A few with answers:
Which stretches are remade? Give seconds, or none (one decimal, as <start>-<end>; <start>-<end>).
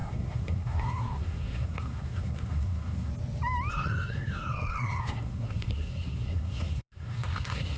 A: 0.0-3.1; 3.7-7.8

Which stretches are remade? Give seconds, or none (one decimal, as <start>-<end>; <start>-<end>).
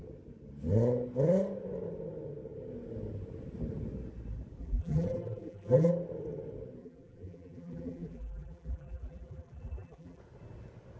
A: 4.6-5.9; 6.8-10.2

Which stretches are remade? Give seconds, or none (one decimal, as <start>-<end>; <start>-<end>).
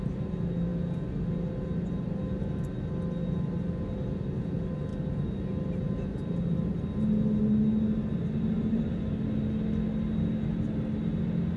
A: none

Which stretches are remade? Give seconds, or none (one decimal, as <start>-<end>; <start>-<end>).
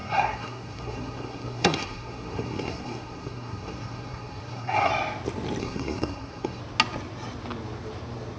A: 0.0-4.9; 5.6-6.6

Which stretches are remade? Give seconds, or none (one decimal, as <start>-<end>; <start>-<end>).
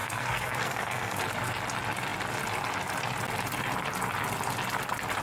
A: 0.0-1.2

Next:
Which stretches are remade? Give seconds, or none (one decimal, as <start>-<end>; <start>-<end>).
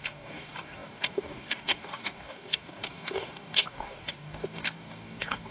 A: 0.0-5.5